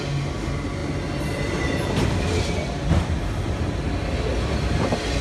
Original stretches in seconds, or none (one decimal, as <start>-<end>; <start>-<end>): 0.0-5.2